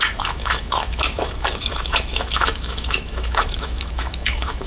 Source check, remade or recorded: remade